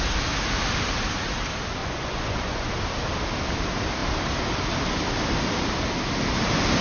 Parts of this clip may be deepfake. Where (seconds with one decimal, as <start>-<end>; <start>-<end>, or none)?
1.8-2.7